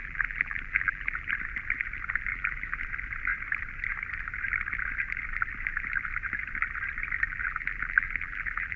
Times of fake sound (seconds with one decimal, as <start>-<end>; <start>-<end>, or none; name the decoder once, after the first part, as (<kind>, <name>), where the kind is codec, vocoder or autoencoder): 0.0-1.3 (vocoder, BigVGAN v2); 2.3-2.8; 7.3-8.8